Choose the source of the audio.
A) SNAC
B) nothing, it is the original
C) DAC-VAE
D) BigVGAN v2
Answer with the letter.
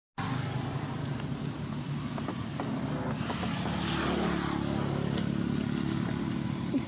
B